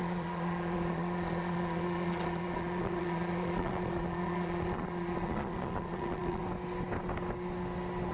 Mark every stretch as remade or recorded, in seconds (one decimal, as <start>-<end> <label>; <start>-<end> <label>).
0.0-6.4 remade; 6.4-8.1 recorded